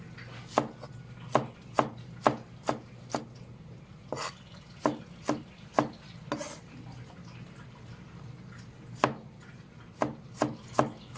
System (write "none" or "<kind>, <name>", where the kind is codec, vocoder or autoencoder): none